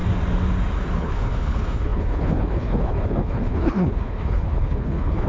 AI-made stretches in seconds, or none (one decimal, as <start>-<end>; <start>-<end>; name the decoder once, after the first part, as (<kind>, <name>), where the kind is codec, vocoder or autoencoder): 0.9-5.3 (codec, HILCodec)